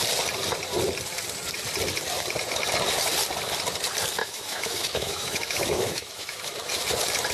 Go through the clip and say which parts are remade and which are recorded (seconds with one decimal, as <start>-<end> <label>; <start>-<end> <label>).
0.0-4.2 recorded; 4.2-6.7 remade; 6.7-7.3 recorded